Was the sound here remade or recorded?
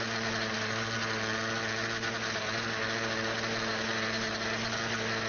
recorded